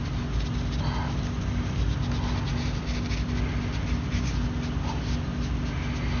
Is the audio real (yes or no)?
yes